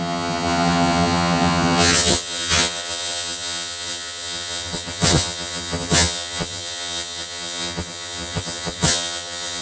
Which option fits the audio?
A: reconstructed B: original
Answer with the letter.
A